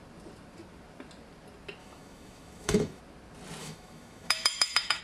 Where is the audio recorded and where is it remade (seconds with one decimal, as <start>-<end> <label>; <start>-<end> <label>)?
0.0-1.8 recorded; 1.8-3.0 remade; 3.0-3.6 recorded; 3.6-5.0 remade